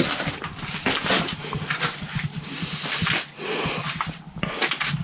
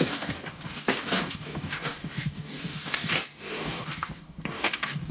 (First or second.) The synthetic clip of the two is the second